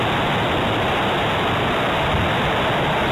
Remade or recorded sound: recorded